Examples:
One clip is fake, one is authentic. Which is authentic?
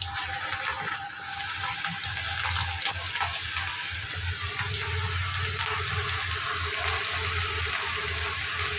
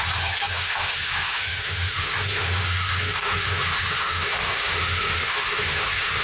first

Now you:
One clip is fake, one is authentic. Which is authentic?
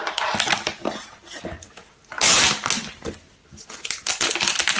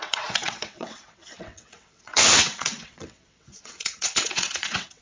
first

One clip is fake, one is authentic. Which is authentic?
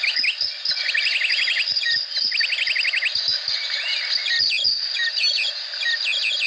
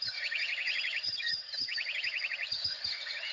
first